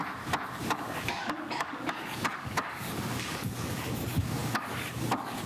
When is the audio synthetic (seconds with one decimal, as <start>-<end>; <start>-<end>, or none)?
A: 0.6-5.5